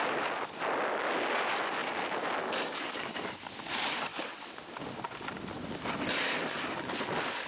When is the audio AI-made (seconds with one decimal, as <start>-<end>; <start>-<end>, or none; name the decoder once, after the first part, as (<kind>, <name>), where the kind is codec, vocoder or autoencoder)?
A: none